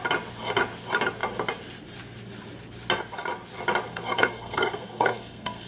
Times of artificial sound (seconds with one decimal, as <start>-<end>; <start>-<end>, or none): 3.9-5.7